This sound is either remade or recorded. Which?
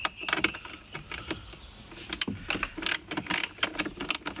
recorded